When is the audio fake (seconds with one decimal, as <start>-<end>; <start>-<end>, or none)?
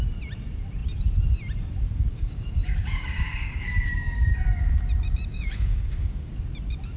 2.1-4.3; 5.3-6.3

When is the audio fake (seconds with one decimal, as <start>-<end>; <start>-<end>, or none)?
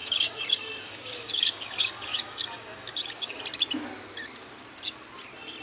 0.0-3.4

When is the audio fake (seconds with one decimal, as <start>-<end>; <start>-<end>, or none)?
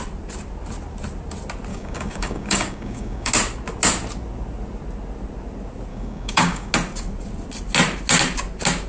1.7-3.3; 5.9-6.7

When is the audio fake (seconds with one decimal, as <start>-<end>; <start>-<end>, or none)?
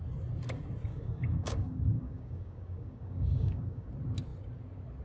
0.9-3.9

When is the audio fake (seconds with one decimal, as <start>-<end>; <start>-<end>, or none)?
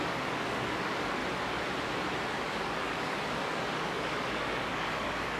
0.0-1.2; 2.3-5.4